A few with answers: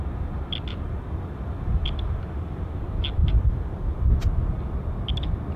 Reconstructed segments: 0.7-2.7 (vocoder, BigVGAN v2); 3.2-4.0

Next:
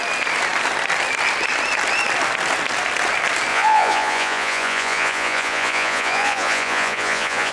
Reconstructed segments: 3.5-7.5 (vocoder, Vocos)